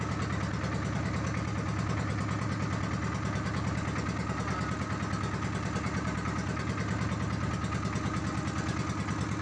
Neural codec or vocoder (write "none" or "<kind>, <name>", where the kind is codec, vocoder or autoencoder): none